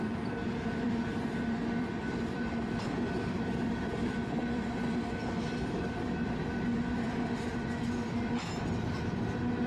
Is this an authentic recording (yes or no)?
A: no